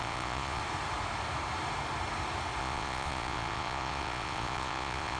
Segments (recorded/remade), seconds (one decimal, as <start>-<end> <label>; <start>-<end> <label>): 0.0-0.6 remade; 0.6-2.6 recorded; 2.6-5.2 remade